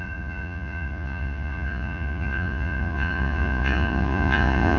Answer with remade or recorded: remade